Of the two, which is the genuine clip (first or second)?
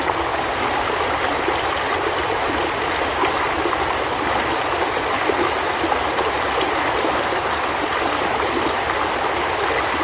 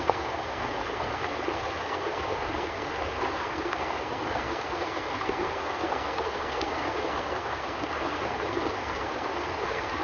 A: first